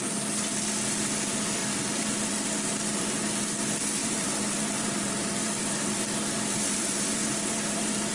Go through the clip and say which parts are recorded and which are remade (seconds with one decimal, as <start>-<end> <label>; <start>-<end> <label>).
0.0-1.6 recorded; 1.6-2.3 remade; 2.3-4.0 recorded; 4.0-8.1 remade